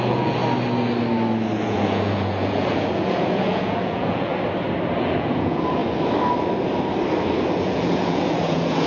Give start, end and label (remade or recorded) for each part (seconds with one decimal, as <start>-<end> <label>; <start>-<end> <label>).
0.0-0.4 remade; 0.4-1.6 recorded; 1.6-4.3 remade; 4.3-5.0 recorded; 5.0-5.8 remade; 5.8-7.6 recorded; 7.6-8.9 remade